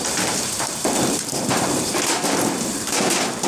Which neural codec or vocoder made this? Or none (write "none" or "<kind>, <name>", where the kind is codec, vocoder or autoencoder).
vocoder, BigVGAN v2